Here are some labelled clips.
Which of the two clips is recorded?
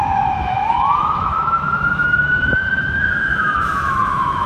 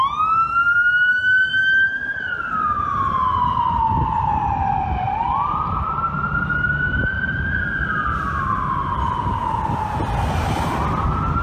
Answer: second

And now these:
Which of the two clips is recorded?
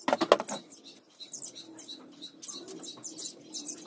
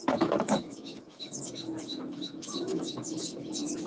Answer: first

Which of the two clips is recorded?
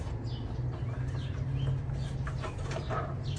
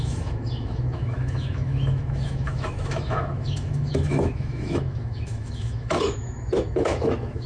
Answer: first